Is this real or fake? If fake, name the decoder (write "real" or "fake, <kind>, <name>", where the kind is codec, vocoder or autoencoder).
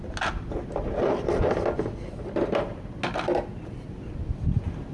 real